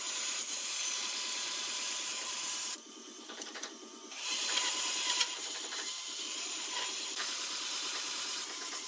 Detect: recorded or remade remade